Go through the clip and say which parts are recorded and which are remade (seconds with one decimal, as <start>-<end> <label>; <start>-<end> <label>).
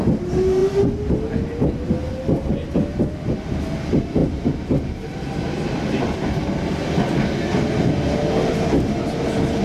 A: 0.0-9.6 recorded